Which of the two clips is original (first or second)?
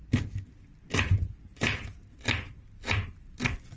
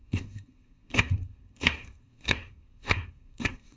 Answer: first